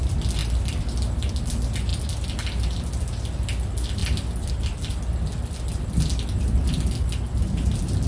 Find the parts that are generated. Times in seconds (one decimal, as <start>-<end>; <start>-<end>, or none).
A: none